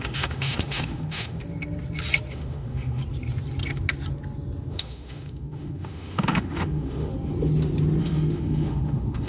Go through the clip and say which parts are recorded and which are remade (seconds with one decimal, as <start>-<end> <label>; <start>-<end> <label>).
0.0-1.4 remade; 1.4-2.3 recorded; 2.3-3.0 remade; 3.0-4.7 recorded; 4.7-7.1 remade; 7.1-8.0 recorded; 8.0-9.3 remade